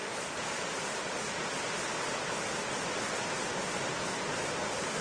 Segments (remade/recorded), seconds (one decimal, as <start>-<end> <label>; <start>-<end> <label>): 0.0-5.0 recorded